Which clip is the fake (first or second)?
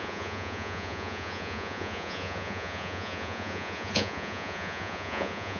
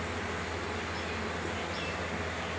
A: first